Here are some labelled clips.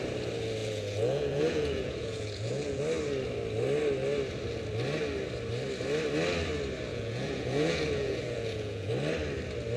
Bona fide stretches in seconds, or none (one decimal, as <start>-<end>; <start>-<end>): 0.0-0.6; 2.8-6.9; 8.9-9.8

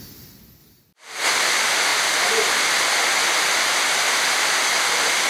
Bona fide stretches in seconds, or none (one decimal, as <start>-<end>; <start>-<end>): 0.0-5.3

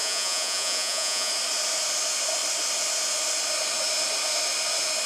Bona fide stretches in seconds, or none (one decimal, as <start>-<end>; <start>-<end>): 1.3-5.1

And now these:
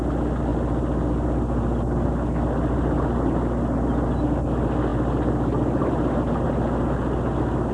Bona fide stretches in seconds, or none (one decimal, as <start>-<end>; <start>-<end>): 0.0-7.7